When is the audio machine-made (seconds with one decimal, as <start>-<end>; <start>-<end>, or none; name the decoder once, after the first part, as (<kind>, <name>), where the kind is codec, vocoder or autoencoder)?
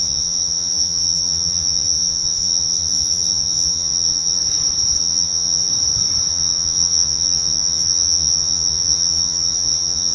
0.0-4.4 (vocoder, Vocos); 5.0-5.7; 6.3-10.1